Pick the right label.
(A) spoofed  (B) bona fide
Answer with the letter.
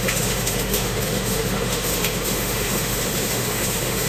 A